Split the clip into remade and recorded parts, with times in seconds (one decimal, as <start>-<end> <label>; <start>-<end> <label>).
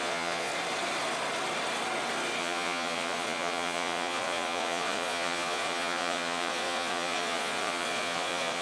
0.0-0.5 remade; 0.5-2.4 recorded; 2.4-8.6 remade